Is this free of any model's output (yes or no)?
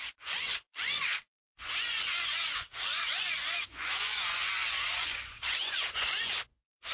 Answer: no